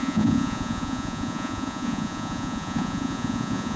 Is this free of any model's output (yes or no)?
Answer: no